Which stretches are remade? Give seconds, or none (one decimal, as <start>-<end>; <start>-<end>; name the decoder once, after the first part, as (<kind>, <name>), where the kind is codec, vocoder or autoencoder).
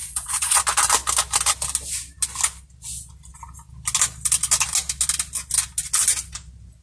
0.0-0.6 (vocoder, Vocos)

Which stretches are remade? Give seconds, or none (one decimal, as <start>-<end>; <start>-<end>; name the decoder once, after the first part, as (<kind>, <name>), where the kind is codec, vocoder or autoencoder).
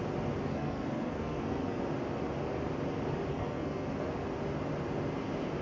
0.5-1.8 (codec, SNAC); 3.3-4.1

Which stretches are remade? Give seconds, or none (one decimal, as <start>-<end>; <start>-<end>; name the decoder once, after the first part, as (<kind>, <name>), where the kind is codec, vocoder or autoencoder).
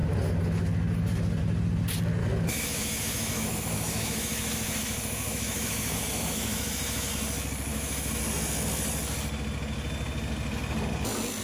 2.2-7.1 (autoencoder, DAC-VAE); 7.7-8.2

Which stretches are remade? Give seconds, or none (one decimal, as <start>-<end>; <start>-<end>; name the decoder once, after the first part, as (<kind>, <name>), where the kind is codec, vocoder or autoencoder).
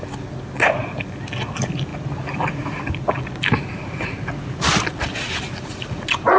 none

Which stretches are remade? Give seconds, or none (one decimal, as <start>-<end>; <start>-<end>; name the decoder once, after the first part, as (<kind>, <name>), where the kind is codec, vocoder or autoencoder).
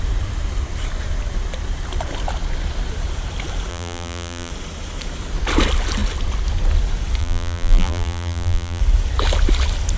3.7-4.5 (vocoder, BigVGAN v2); 7.2-8.8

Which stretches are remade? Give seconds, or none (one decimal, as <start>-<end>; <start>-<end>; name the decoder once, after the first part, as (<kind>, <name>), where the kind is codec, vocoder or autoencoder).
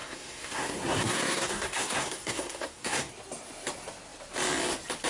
0.0-3.1 (codec, SNAC)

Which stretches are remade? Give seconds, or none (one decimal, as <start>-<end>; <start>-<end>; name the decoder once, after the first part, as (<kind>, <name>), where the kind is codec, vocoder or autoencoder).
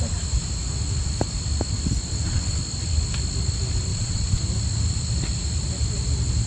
2.1-2.6 (vocoder, WaveNeXt); 3.9-4.4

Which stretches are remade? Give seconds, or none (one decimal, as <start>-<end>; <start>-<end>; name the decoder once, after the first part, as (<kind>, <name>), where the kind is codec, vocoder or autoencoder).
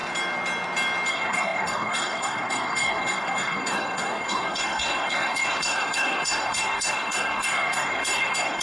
1.1-8.6 (codec, SNAC)